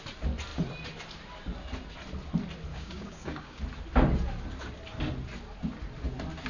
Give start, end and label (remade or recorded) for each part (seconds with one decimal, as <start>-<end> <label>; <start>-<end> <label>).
0.0-2.7 recorded; 2.7-3.6 remade; 3.6-6.5 recorded